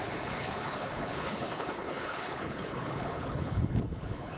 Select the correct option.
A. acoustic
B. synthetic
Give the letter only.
B